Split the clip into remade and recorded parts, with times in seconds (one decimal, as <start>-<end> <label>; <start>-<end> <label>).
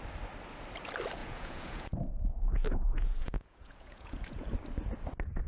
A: 0.0-1.2 recorded; 1.2-4.5 remade; 4.5-5.5 recorded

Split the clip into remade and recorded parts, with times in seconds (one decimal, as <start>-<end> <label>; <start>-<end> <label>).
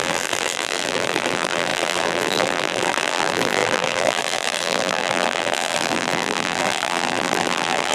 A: 0.0-7.9 remade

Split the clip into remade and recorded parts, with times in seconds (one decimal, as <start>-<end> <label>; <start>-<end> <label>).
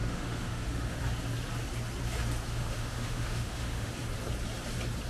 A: 0.0-1.0 remade; 1.0-2.5 recorded; 2.5-3.9 remade; 3.9-5.1 recorded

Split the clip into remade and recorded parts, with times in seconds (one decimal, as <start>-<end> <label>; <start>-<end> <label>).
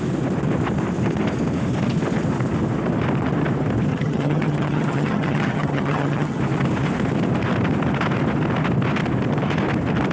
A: 0.0-3.9 recorded; 3.9-6.4 remade; 6.4-10.1 recorded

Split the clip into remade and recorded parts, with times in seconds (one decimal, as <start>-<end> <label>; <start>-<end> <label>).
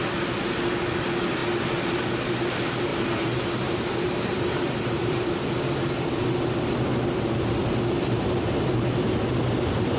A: 0.0-2.9 recorded; 2.9-5.4 remade; 5.4-10.0 recorded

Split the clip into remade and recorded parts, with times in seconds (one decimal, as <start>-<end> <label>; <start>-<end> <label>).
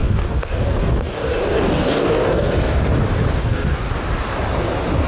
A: 0.0-2.5 remade; 2.5-3.4 recorded; 3.4-3.9 remade; 3.9-5.1 recorded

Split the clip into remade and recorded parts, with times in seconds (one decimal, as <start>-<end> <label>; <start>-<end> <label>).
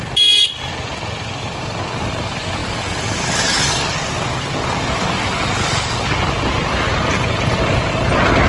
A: 0.0-8.5 recorded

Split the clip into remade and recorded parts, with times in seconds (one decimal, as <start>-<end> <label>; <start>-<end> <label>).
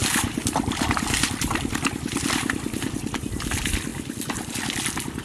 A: 0.0-3.1 remade; 3.1-3.9 recorded; 3.9-4.5 remade; 4.5-5.2 recorded